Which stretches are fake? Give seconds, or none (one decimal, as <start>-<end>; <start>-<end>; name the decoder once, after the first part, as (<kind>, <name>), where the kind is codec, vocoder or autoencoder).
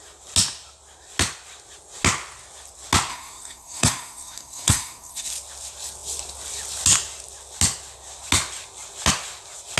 3.1-5.3 (codec, SNAC)